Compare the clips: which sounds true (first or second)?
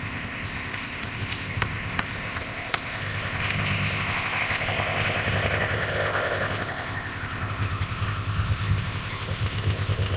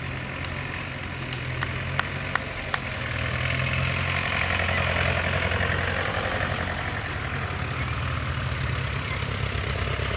second